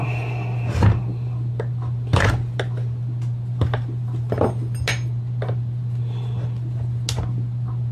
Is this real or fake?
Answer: real